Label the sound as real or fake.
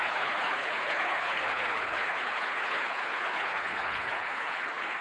fake